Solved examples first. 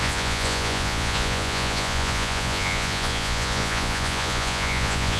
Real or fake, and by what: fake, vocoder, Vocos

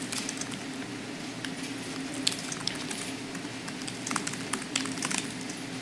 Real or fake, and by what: real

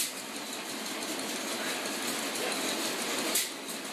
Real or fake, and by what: real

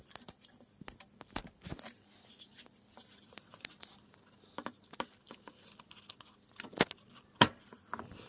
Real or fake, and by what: real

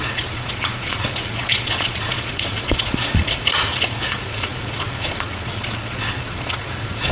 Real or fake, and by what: fake, vocoder, Vocos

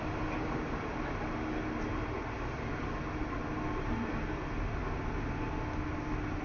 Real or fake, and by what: real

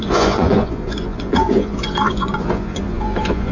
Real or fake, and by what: fake, vocoder, Vocos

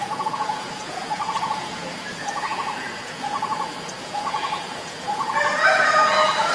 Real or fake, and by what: fake, vocoder, Vocos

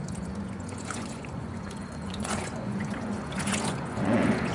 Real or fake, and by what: fake, vocoder, Vocos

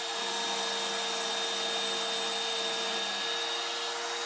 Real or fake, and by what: real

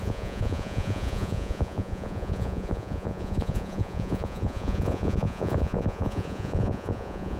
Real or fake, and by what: fake, vocoder, Vocos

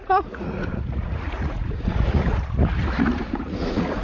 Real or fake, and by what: fake, vocoder, Vocos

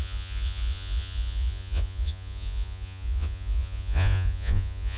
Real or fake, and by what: fake, vocoder, Vocos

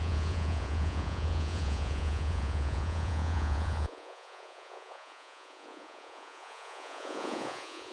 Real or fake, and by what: fake, vocoder, Vocos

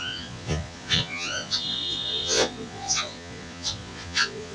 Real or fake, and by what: fake, vocoder, Vocos